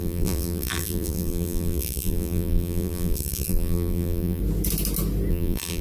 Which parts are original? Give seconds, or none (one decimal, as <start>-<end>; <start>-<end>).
4.4-5.3